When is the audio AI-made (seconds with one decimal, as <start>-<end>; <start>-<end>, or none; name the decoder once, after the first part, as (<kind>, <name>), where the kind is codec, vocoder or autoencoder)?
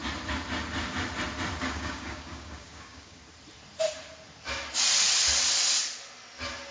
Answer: 1.6-3.2 (codec, DAC)